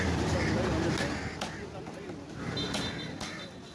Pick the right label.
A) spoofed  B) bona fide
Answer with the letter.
B